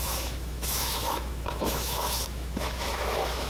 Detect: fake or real fake